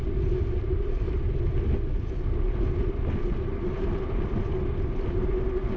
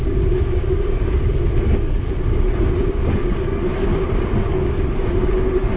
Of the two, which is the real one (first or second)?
first